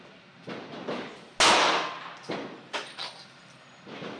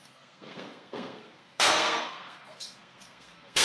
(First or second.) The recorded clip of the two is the first